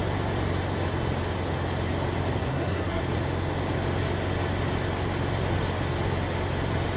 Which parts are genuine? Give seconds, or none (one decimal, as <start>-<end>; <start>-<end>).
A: 0.0-2.4; 3.0-7.0